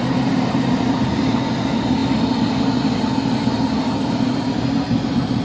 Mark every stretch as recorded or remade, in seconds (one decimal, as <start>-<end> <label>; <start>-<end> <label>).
0.0-5.4 recorded